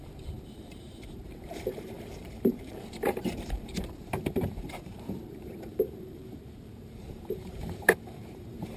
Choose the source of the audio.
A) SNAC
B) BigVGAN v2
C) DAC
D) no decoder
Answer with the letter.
B